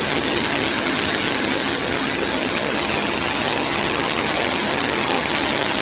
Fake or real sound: fake